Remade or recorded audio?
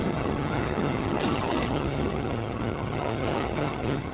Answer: remade